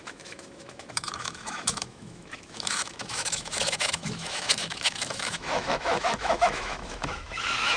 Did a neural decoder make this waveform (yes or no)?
yes